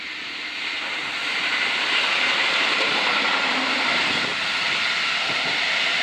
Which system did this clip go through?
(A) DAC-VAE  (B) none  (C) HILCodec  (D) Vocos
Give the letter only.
B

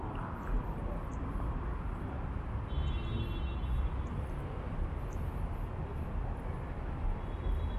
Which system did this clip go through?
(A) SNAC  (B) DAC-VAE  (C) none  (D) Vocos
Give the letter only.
C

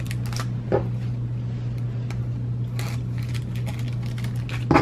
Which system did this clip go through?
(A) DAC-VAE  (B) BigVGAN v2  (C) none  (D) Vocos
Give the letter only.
C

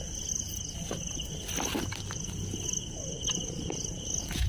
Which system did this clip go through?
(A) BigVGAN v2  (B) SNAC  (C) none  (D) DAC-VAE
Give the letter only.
C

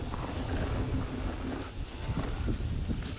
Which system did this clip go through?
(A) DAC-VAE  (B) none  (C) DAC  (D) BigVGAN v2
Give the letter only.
B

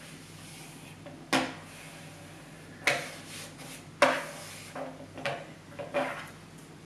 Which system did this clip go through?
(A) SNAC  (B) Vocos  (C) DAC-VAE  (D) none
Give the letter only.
D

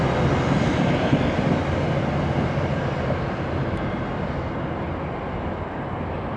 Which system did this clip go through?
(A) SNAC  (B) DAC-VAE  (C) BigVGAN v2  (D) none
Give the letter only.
D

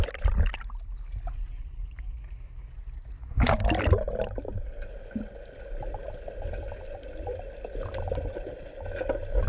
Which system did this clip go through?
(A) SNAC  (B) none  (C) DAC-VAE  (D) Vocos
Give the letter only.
B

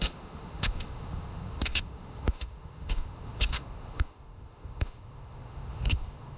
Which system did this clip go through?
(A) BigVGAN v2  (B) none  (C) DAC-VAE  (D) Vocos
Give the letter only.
C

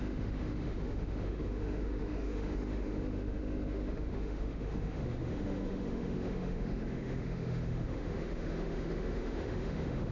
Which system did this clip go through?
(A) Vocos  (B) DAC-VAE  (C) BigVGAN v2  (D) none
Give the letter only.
B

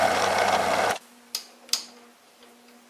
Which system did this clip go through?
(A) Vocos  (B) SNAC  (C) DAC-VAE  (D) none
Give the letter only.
D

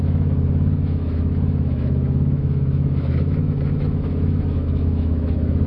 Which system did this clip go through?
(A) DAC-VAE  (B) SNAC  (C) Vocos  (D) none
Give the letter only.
A